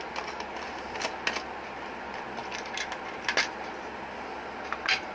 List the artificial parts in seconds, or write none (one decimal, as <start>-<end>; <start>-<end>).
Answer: none